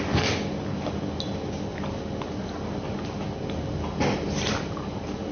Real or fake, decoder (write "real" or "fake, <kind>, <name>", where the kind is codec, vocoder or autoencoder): real